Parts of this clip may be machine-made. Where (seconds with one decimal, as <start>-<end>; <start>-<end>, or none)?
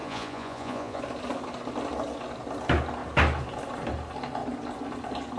0.0-1.0